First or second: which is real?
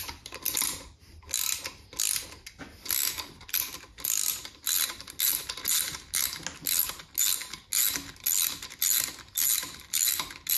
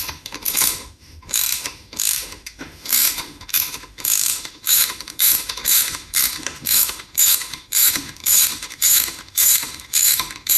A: first